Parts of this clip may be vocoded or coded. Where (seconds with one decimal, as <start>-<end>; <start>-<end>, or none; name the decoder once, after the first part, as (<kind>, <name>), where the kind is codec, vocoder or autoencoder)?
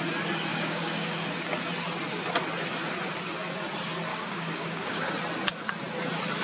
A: 0.5-1.3 (codec, DAC); 4.1-5.1